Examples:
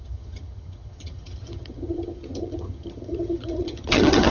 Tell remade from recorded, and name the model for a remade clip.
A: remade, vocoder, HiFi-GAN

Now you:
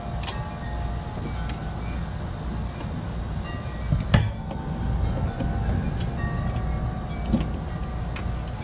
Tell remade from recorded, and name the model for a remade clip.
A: recorded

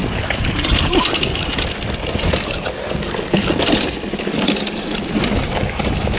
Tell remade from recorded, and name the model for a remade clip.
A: recorded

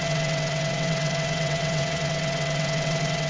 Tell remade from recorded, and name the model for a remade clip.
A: remade, vocoder, WaveNeXt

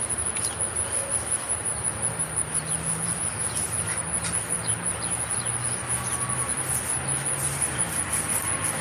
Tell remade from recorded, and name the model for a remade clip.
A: recorded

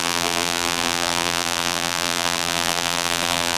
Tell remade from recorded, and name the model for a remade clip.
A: remade, vocoder, BigVGAN v2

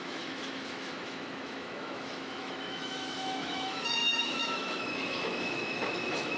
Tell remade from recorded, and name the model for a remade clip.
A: remade, autoencoder, DAC-VAE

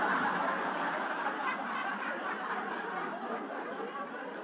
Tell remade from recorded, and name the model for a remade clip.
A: recorded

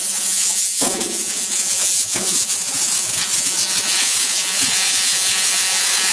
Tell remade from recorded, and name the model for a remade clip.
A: remade, vocoder, Vocos